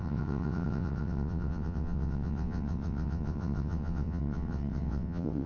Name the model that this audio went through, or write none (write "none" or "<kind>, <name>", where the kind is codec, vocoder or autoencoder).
vocoder, WaveNeXt